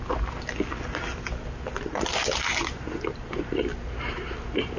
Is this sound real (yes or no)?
yes